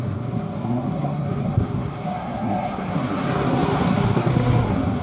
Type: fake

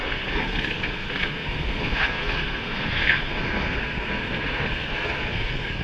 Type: fake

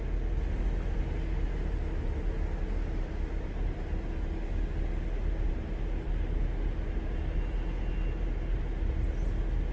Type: real